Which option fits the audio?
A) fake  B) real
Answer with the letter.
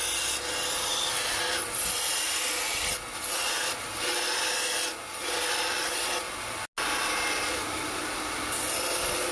B